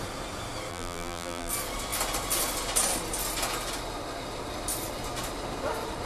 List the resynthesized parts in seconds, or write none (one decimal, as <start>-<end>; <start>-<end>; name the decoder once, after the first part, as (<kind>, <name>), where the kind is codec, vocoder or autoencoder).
0.7-1.5 (vocoder, BigVGAN v2)